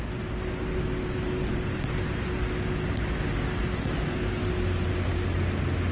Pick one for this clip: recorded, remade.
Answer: recorded